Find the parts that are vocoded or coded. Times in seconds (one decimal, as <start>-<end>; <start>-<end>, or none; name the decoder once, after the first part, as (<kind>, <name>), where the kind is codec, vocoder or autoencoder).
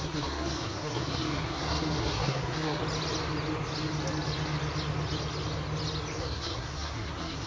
0.0-2.8 (codec, SNAC); 6.2-7.5